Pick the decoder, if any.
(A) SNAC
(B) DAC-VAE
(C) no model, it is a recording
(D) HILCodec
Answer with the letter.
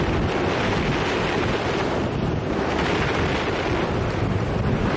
C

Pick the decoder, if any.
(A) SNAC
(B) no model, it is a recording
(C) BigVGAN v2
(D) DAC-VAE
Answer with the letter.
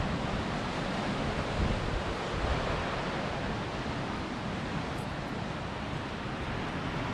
B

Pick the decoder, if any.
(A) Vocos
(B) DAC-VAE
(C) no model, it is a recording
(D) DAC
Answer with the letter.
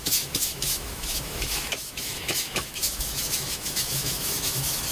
B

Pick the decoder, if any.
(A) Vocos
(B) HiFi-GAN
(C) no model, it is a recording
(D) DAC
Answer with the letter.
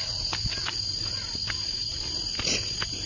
C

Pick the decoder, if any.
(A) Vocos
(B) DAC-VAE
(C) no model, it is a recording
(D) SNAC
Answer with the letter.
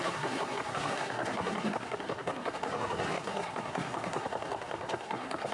D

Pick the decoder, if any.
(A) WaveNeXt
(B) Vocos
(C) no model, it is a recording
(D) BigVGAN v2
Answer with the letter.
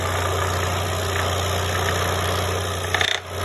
C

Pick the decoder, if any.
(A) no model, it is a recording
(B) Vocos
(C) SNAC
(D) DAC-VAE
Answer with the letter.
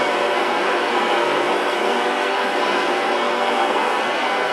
C